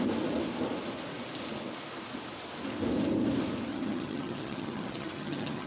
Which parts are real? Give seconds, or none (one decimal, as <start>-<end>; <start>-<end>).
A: 0.0-3.7